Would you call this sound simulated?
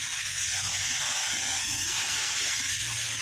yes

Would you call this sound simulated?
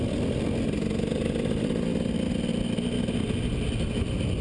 no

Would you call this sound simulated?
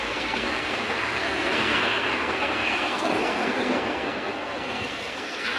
yes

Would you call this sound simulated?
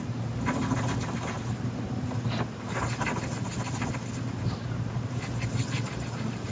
no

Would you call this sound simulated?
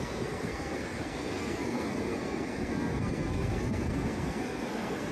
yes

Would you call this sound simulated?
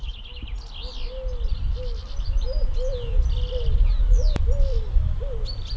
no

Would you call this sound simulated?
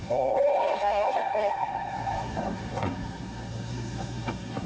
yes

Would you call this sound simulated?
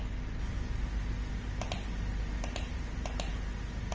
no